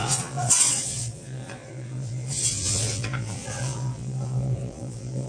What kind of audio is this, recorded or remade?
remade